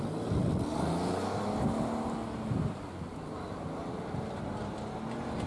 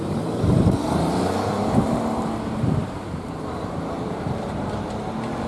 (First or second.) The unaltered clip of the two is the first